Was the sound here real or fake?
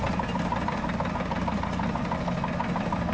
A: real